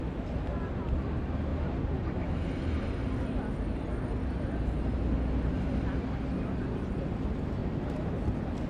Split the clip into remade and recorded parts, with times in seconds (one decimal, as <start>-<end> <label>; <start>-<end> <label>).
0.0-1.5 recorded; 1.5-3.2 remade; 3.2-7.6 recorded; 7.6-8.1 remade; 8.1-8.7 recorded